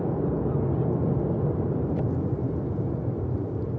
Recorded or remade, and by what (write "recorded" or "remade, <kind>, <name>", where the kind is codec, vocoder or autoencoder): recorded